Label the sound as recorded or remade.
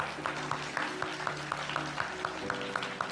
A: recorded